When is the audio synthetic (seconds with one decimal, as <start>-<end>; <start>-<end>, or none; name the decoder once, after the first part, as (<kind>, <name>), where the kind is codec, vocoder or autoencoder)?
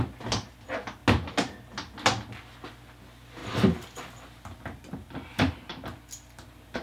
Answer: none